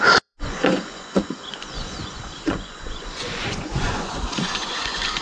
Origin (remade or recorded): remade